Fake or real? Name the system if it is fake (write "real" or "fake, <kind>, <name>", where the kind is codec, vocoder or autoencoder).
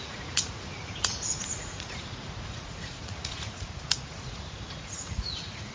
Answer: fake, vocoder, Vocos